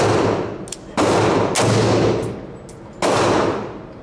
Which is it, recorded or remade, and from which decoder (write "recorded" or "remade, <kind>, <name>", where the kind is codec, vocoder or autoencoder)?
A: recorded